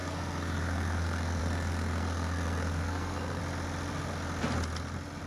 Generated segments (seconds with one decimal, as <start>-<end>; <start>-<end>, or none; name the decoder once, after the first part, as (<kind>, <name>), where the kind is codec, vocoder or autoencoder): 0.0-3.4 (codec, SNAC)